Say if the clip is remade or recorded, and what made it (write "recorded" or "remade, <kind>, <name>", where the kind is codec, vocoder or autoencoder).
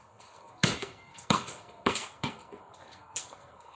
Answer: remade, codec, SNAC